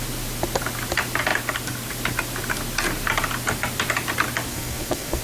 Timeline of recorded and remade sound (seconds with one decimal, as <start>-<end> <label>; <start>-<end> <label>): 0.0-4.5 recorded; 4.5-5.2 remade